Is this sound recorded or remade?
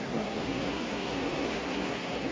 remade